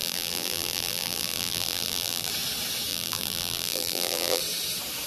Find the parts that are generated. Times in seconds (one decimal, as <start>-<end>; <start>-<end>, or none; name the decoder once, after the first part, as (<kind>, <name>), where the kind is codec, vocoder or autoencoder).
0.0-2.3 (vocoder, BigVGAN v2); 2.9-4.4